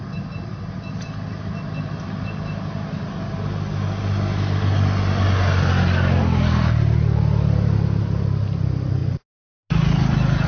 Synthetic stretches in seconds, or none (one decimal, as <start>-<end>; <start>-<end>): none